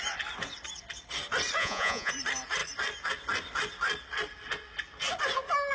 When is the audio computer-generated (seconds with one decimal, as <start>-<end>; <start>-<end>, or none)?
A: 1.6-2.1